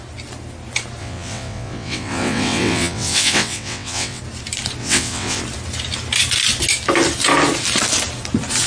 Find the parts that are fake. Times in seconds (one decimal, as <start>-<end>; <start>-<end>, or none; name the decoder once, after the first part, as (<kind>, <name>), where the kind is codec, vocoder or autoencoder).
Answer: 1.0-4.2 (vocoder, WaveNeXt); 4.8-5.4